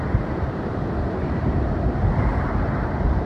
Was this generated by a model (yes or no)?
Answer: yes